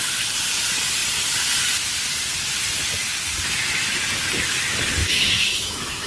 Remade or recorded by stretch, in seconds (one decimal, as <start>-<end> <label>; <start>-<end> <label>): 0.0-5.0 recorded; 5.0-6.1 remade